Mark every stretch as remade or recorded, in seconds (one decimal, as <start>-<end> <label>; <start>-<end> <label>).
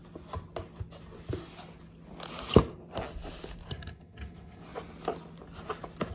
0.0-3.7 recorded; 3.7-4.6 remade; 4.6-6.1 recorded